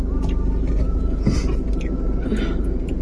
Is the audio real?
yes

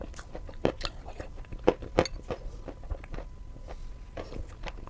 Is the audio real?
yes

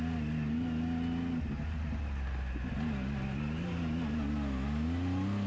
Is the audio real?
yes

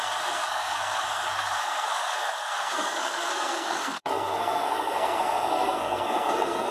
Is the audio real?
no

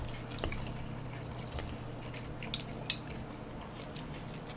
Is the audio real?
yes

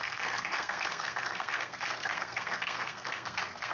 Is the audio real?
no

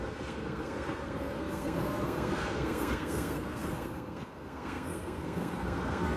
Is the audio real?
no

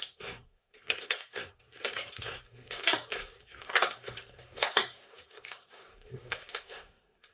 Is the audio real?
no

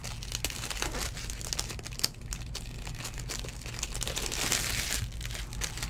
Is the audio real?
yes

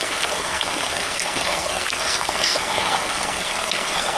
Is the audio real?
no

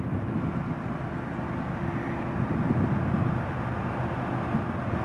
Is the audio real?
yes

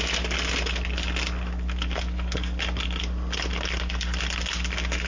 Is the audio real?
yes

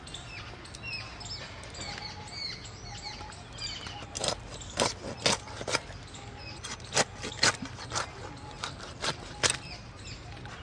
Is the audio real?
yes